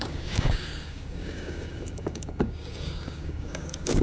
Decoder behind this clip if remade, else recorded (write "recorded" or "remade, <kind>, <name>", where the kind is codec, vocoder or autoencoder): remade, codec, DAC